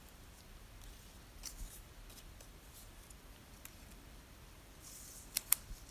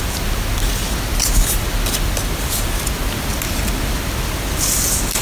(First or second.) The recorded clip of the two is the second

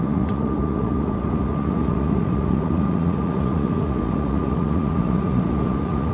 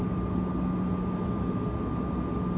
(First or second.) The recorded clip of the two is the second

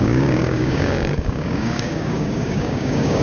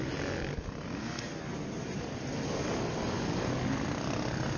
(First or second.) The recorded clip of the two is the second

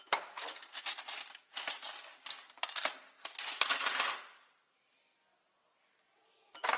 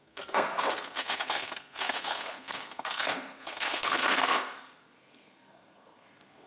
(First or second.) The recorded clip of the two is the first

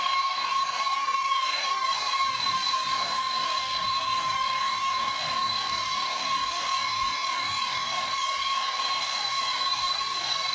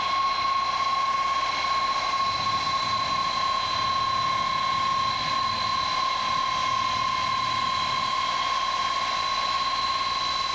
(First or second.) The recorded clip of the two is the second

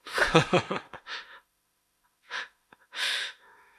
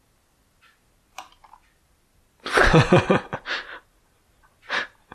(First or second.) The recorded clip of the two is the second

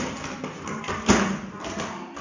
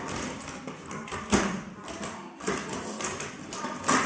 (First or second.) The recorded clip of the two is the first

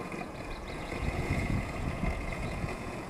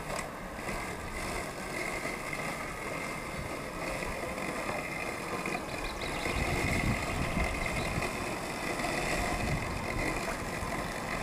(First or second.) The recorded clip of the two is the second